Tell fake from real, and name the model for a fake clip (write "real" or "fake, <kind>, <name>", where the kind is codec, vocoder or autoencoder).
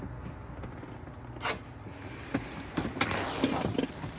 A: real